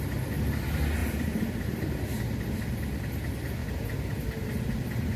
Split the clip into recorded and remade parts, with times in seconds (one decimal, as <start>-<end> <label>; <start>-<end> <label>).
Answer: 0.0-1.0 recorded; 1.0-2.0 remade; 2.0-5.2 recorded